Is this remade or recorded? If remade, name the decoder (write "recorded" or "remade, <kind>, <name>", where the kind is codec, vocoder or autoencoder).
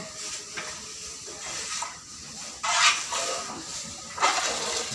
recorded